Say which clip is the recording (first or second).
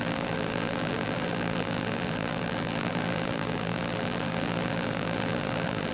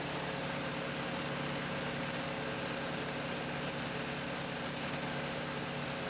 second